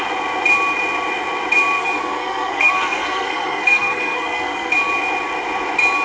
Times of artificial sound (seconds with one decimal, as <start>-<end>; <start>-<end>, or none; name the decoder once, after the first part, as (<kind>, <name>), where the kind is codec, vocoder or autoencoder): 1.8-4.7 (codec, SNAC)